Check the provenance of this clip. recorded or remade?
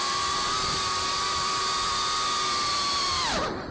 remade